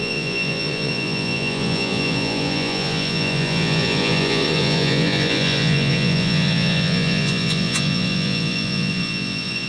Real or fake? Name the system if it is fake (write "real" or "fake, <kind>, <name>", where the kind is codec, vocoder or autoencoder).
fake, vocoder, Vocos